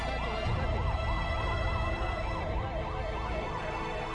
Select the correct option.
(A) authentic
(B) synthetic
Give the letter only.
A